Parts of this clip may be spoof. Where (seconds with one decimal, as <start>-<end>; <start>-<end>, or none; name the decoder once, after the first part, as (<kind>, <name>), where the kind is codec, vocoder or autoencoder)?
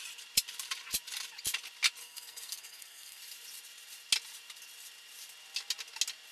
2.0-3.2 (codec, SNAC)